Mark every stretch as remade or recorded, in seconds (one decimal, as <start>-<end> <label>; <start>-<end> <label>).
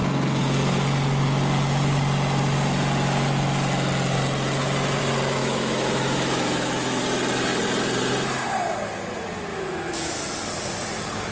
0.0-5.4 recorded; 5.4-7.0 remade; 7.0-9.5 recorded; 9.5-10.1 remade; 10.1-11.3 recorded